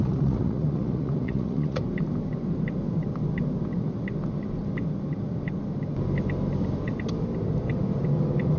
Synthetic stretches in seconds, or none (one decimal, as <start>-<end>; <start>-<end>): 0.0-1.8